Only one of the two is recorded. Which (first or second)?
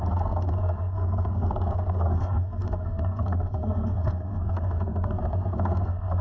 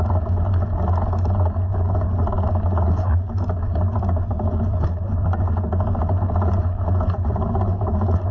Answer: second